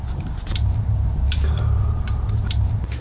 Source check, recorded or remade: remade